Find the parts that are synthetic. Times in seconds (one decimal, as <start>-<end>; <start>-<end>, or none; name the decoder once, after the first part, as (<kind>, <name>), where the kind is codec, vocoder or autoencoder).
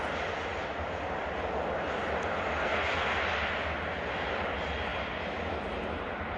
2.6-3.2 (codec, SNAC)